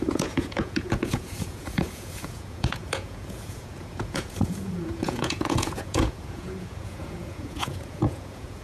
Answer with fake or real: fake